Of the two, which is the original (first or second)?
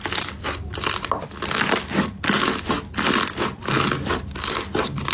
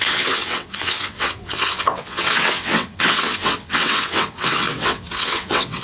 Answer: first